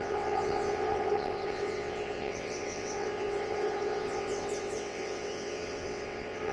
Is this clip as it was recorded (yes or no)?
no